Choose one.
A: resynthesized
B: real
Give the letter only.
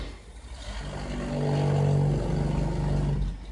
B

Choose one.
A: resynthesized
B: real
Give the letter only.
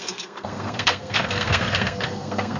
A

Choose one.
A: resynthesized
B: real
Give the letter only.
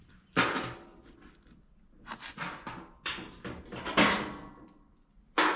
B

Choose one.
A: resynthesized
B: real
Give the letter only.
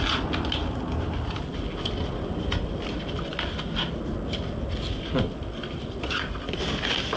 B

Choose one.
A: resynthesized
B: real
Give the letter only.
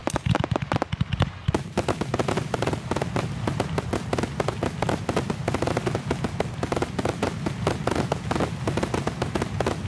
B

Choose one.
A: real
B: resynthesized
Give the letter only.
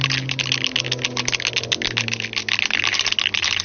A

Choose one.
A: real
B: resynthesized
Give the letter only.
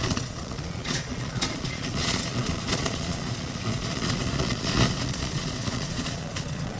B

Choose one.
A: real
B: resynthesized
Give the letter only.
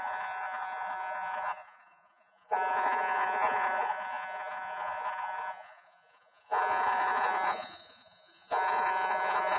B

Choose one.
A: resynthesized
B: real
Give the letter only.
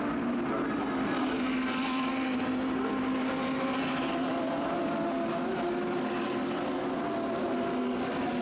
B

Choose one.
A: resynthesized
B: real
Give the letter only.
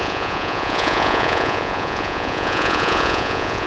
A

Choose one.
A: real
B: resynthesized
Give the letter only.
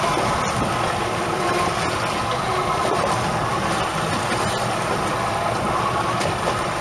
A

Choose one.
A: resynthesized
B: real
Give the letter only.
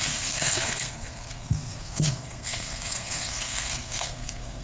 A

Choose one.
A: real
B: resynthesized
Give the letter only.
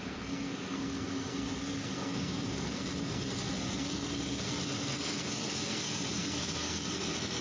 B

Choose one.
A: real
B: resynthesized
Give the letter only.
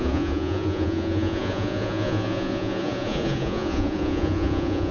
B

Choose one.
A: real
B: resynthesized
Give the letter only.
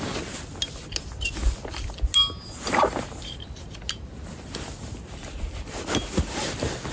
A